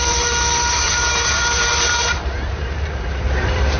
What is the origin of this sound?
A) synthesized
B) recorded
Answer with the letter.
A